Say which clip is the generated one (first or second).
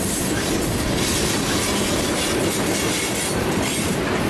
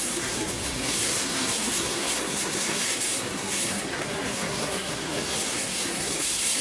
second